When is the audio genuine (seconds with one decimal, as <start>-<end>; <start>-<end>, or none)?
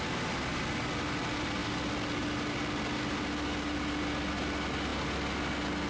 0.0-5.9